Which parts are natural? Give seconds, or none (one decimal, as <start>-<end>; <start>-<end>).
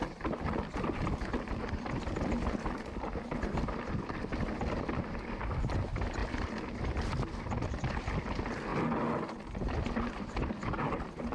6.2-6.9; 8.7-10.9